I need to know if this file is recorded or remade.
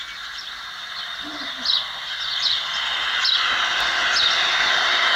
recorded